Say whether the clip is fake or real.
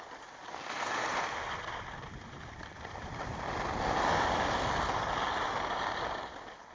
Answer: real